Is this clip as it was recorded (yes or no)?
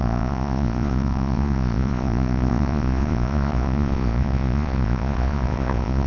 no